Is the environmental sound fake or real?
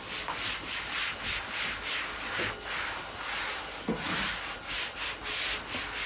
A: real